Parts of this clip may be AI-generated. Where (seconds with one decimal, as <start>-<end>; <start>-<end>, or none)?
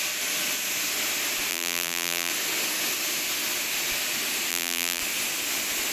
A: 1.5-2.3; 4.5-5.0